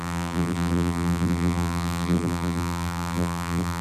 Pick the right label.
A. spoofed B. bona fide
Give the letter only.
A